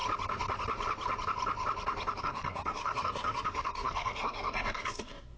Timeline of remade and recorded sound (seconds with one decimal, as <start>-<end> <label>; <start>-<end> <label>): 0.0-2.2 recorded; 2.2-5.4 remade